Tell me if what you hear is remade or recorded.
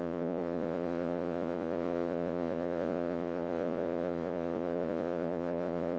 remade